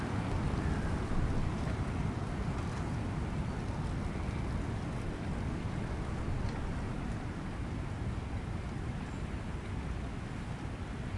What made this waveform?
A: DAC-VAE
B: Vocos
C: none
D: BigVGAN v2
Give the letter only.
C